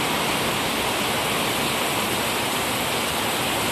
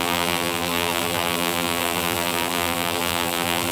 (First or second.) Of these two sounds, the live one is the first